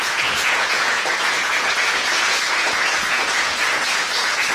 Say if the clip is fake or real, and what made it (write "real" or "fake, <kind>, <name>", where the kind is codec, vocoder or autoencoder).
fake, vocoder, Vocos